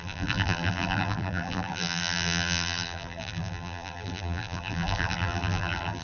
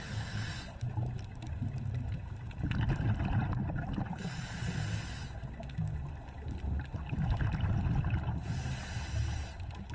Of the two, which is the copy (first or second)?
first